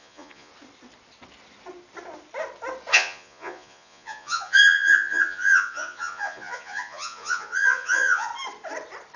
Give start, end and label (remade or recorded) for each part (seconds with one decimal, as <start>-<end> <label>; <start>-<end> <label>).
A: 0.0-0.5 remade; 0.5-2.9 recorded; 2.9-8.3 remade; 8.3-9.2 recorded